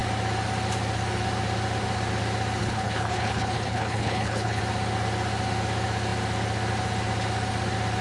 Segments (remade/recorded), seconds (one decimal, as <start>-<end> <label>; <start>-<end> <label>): 0.0-2.6 recorded; 2.6-4.6 remade; 4.6-8.0 recorded